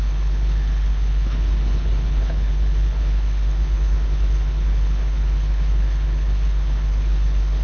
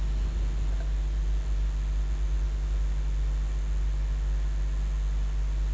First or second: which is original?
second